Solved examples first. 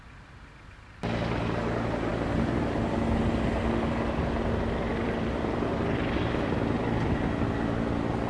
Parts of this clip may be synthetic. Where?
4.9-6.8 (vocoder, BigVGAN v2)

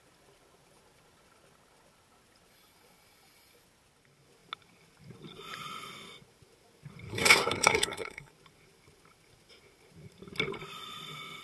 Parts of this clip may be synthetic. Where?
7.1-8.3 (codec, SNAC)

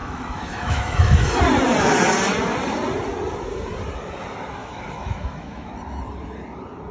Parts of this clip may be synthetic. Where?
0.0-1.4 (autoencoder, DAC-VAE); 4.6-5.7

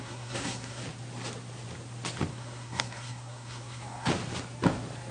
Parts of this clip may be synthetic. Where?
0.0-0.8 (codec, SNAC); 2.3-4.1

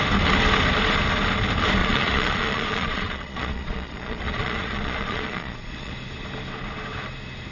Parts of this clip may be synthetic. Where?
1.8-5.9 (vocoder, Vocos)